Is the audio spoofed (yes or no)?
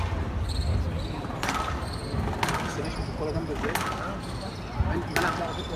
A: no